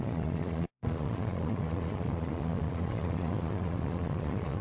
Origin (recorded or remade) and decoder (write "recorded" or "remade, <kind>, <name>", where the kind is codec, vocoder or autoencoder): remade, vocoder, Vocos